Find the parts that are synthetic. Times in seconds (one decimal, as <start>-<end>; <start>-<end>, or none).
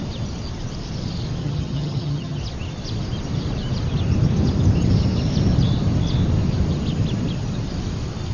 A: 1.4-2.4